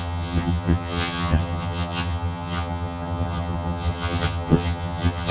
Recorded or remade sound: remade